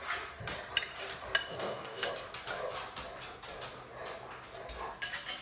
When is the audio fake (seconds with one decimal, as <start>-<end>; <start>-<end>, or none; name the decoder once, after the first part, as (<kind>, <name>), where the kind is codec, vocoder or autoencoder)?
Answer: 1.5-2.1 (codec, DAC)